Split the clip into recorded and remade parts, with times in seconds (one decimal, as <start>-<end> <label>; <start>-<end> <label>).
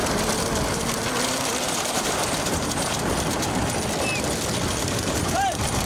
0.0-1.3 recorded; 1.3-3.6 remade; 3.6-4.7 recorded; 4.7-5.9 remade